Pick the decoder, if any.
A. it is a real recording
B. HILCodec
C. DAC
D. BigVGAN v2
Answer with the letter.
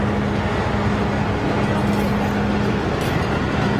A